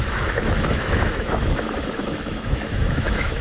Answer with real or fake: fake